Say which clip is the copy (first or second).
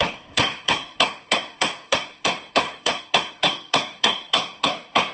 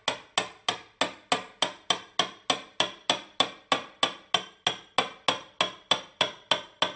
first